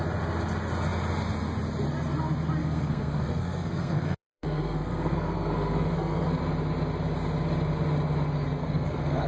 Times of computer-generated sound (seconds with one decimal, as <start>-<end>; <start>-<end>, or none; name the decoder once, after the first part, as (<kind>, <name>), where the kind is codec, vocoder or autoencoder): 2.6-6.4 (codec, SNAC); 8.6-9.3